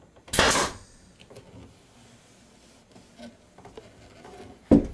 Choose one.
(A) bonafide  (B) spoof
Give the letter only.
A